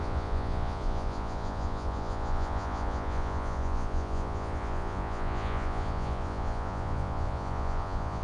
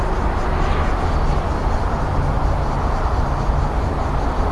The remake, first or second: first